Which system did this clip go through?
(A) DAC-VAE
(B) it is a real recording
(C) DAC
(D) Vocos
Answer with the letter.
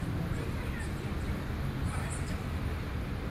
B